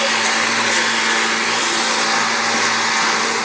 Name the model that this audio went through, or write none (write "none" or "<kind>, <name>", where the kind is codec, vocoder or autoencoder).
none